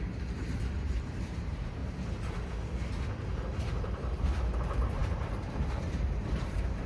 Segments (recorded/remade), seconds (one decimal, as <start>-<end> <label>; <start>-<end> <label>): 0.0-1.8 remade; 1.8-3.6 recorded; 3.6-6.9 remade